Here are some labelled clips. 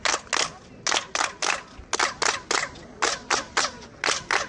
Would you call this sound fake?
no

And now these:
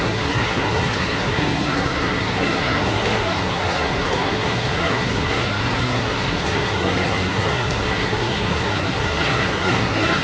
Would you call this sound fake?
yes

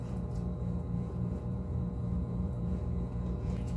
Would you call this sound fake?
yes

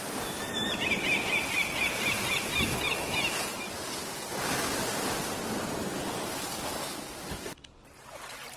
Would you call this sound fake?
no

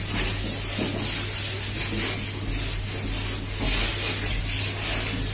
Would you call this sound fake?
no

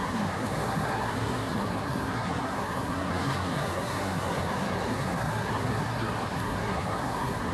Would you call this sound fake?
yes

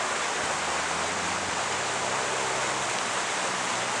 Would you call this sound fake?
yes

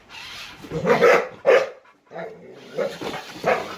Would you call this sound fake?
yes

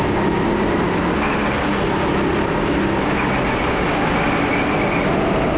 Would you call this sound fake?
no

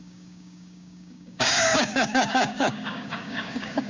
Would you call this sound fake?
yes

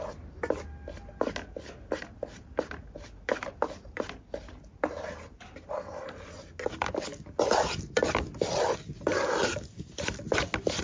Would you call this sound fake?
no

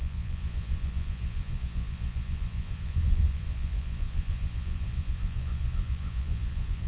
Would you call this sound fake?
yes